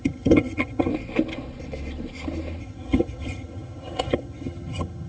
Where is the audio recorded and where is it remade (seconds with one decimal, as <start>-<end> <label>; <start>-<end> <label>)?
0.0-0.9 remade; 0.9-2.6 recorded; 2.6-5.1 remade